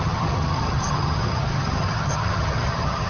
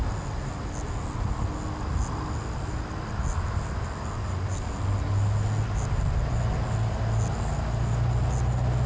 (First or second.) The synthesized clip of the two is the first